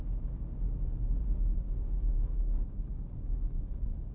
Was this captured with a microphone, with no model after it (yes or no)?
yes